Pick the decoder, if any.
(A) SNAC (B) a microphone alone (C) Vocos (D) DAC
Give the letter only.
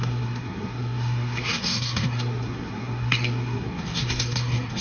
A